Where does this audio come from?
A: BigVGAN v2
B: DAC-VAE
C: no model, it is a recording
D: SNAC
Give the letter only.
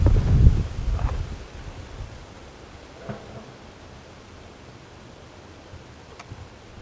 C